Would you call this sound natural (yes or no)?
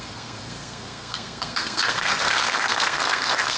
no